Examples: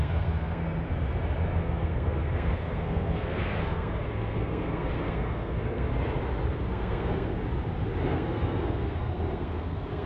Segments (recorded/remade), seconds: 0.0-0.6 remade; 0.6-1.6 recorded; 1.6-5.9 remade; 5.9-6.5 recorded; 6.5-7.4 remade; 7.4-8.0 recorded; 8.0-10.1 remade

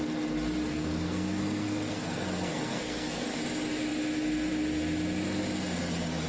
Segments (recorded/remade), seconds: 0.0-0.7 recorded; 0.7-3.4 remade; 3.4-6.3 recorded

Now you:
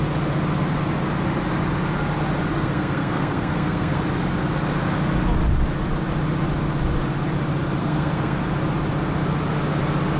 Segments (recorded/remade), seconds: 0.0-2.5 recorded; 2.5-4.0 remade; 4.0-7.8 recorded; 7.8-8.4 remade; 8.4-10.2 recorded

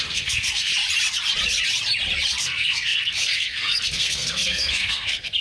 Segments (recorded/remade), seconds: 0.0-0.7 remade; 0.7-2.4 recorded; 2.4-5.4 remade